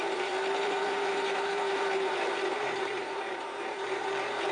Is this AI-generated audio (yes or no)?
yes